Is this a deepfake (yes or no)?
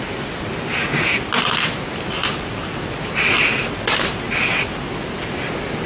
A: no